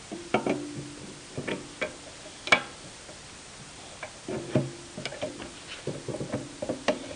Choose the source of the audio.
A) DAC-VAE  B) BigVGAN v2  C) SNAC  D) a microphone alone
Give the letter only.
D